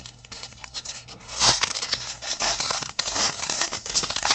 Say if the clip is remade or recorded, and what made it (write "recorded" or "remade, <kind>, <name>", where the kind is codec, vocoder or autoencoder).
remade, codec, SNAC